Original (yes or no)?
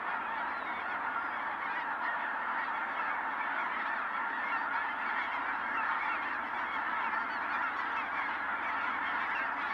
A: yes